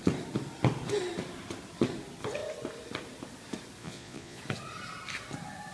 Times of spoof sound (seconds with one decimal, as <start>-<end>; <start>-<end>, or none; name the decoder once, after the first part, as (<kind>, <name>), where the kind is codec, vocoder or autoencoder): 3.8-4.4 (vocoder, Vocos)